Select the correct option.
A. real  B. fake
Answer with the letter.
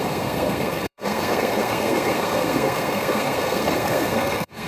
B